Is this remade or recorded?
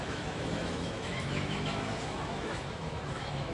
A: remade